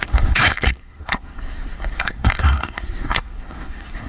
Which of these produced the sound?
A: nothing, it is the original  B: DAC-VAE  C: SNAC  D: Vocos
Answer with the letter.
C